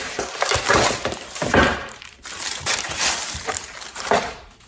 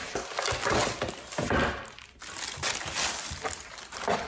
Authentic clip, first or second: second